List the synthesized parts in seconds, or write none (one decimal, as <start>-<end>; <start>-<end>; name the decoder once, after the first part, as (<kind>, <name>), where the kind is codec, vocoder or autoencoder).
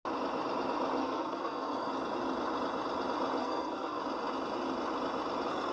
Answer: 1.0-1.9 (codec, SNAC); 3.4-4.0